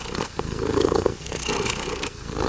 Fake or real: fake